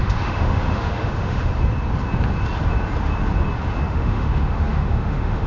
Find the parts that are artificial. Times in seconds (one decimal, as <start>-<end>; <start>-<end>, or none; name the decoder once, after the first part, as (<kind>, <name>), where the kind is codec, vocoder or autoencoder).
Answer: 0.0-1.5 (autoencoder, DAC-VAE); 3.9-5.5